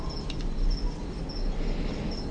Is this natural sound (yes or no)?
yes